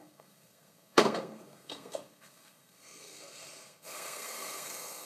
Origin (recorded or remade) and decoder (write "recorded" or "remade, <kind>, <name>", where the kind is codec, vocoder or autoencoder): remade, codec, SNAC